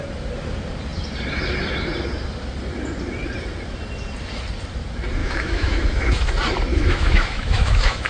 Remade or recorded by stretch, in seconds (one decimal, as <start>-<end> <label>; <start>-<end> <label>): 0.0-5.2 recorded; 5.2-6.3 remade; 6.3-6.7 recorded; 6.7-8.1 remade